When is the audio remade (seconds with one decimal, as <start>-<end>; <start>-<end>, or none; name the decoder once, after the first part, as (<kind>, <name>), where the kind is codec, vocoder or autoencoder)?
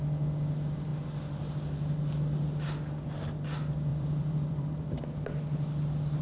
3.9-5.0 (vocoder, BigVGAN v2)